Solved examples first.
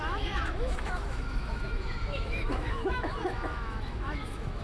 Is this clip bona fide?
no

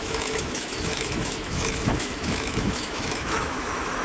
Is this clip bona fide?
no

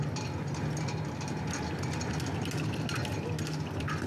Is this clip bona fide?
yes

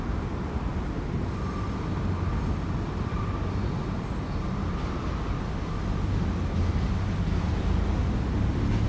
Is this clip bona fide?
yes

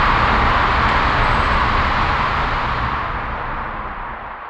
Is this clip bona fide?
yes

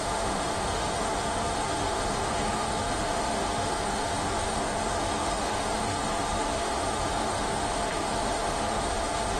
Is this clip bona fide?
no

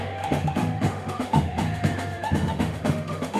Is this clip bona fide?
no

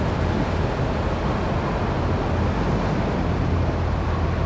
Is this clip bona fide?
yes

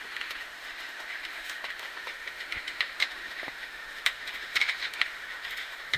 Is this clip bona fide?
no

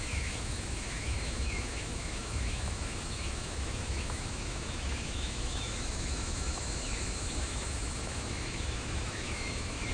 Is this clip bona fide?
no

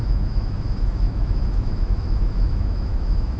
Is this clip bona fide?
no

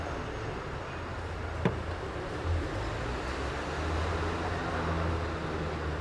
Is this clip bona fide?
yes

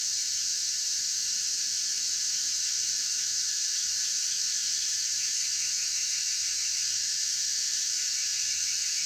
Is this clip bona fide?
no